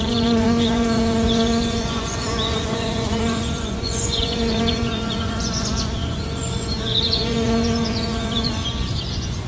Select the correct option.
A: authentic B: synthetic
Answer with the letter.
B